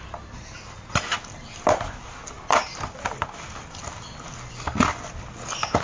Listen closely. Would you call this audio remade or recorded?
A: recorded